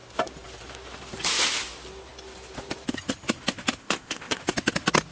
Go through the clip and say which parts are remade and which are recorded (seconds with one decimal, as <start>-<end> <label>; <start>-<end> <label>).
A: 0.0-3.8 recorded; 3.8-4.4 remade; 4.4-5.1 recorded